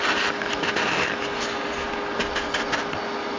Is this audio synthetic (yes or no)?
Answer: no